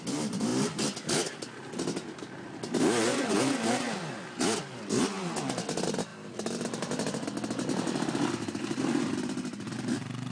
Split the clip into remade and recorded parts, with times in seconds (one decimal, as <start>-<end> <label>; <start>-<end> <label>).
0.0-10.3 recorded